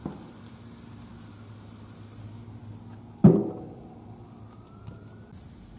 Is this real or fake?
real